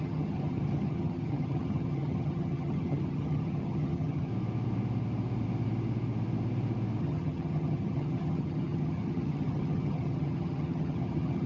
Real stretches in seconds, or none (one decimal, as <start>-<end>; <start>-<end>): 4.3-7.0